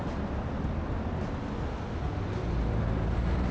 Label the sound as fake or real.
real